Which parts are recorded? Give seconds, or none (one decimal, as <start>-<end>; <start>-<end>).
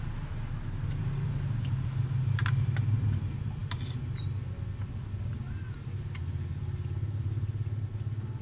0.0-8.4